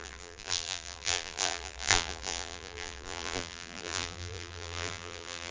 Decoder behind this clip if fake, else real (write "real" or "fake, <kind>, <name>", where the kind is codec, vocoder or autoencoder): fake, vocoder, BigVGAN v2